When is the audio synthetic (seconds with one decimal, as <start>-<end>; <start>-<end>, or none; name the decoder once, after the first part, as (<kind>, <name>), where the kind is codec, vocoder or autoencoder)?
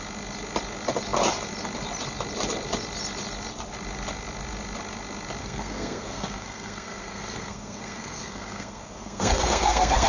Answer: 5.4-10.1 (codec, SNAC)